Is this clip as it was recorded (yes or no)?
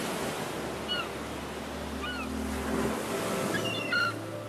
yes